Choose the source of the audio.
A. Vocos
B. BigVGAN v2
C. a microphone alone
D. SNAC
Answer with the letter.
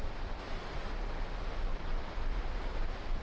C